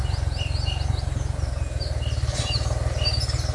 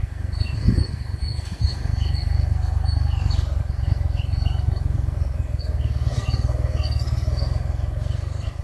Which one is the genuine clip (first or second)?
first